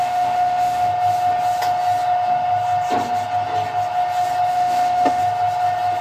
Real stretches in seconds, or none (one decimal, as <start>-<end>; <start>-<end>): 0.9-4.5; 5.2-6.0